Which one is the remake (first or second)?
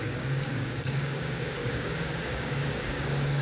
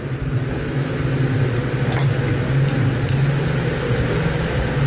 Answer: first